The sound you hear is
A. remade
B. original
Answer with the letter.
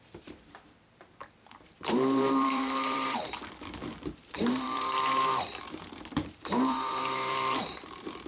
A